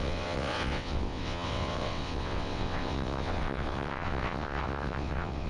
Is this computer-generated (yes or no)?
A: yes